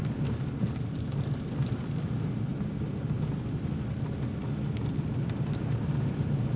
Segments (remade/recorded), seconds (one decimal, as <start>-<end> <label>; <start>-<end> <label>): 0.0-6.6 recorded